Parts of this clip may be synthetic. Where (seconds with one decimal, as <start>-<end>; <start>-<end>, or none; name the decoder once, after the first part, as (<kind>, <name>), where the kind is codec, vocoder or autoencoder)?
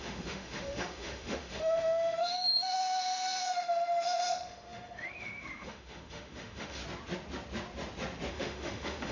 0.0-6.8 (autoencoder, DAC-VAE); 8.3-9.1